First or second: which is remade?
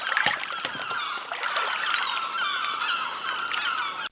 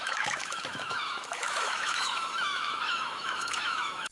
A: second